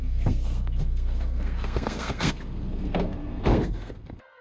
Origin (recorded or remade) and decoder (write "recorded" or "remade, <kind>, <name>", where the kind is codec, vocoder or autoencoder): remade, codec, SNAC